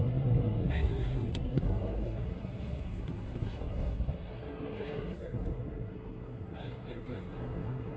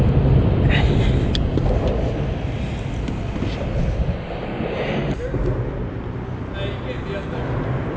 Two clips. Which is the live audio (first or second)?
second